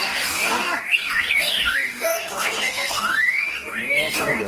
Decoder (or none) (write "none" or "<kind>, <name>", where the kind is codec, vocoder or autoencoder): codec, DAC